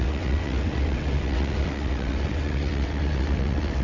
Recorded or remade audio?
remade